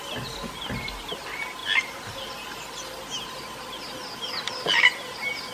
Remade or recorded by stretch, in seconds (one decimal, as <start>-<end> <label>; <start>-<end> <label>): 0.0-5.5 recorded